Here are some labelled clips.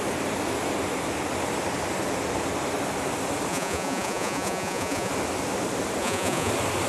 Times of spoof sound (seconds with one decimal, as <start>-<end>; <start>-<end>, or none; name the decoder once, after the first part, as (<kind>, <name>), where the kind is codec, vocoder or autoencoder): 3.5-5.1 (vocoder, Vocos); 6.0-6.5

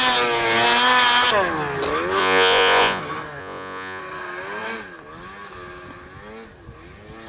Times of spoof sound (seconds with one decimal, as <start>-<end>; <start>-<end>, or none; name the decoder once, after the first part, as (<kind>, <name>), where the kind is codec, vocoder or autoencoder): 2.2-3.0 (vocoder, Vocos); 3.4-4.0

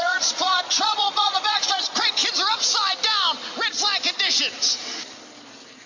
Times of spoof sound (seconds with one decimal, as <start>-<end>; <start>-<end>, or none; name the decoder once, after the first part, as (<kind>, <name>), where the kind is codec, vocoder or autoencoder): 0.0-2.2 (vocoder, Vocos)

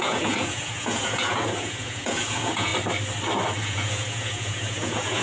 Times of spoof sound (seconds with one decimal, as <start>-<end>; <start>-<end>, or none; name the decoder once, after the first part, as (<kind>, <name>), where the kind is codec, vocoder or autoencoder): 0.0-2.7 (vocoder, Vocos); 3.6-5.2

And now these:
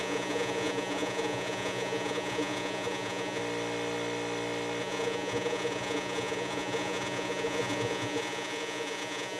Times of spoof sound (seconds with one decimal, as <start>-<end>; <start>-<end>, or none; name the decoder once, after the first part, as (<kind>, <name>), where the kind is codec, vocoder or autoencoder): 0.0-3.4 (vocoder, Vocos); 4.8-9.4

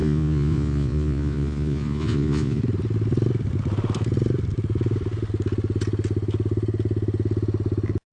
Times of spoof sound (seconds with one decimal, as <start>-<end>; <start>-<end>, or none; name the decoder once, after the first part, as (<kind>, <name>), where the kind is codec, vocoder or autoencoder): 0.0-2.6 (vocoder, Vocos)

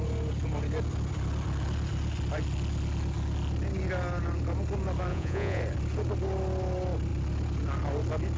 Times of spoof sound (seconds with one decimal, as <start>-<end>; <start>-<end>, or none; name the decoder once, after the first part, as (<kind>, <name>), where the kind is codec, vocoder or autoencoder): 5.1-5.6 (vocoder, Vocos)

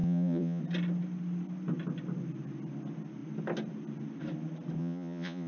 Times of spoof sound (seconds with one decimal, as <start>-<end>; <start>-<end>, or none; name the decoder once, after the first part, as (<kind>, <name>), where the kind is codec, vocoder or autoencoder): 0.0-0.6 (vocoder, Vocos); 4.8-5.5